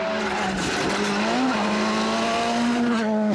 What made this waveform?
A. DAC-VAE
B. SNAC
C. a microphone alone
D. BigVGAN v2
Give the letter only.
C